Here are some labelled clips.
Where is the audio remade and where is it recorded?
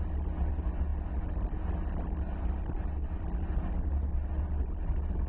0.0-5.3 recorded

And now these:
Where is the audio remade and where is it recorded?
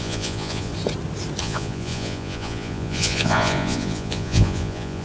0.0-0.7 remade; 0.7-1.4 recorded; 1.4-5.0 remade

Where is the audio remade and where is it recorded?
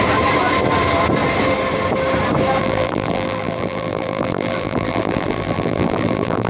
0.0-2.6 recorded; 2.6-6.5 remade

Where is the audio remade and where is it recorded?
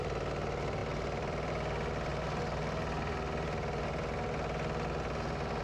0.0-2.1 remade; 2.1-5.6 recorded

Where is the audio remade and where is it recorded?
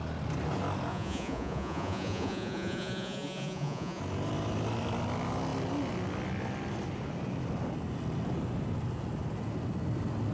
0.0-0.9 recorded; 0.9-4.0 remade; 4.0-10.3 recorded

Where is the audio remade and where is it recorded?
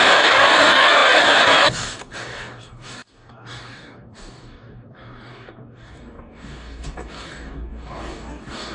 0.0-8.7 remade